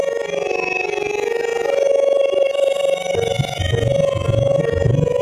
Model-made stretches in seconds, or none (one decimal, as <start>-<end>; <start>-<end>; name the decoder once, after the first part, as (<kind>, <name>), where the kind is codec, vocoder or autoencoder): none